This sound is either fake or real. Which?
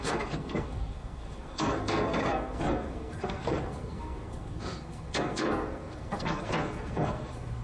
fake